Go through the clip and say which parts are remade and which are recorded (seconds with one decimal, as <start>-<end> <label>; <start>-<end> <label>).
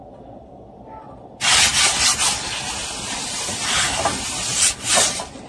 0.0-5.5 recorded